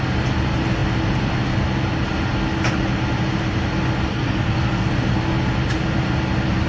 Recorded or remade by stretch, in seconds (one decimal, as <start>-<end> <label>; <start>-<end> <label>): 0.0-4.1 recorded; 4.1-4.9 remade; 4.9-6.7 recorded